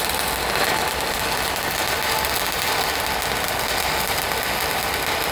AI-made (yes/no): no